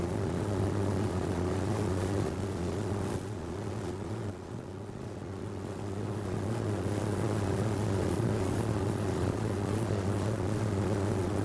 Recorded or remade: remade